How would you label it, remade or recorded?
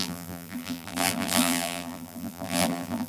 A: remade